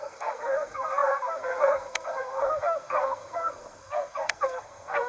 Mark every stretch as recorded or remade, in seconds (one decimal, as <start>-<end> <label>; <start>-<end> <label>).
0.0-5.1 remade